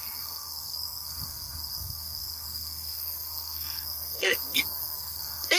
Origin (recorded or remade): remade